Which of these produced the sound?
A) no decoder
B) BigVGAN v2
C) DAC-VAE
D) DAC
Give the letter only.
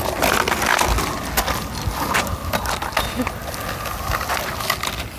A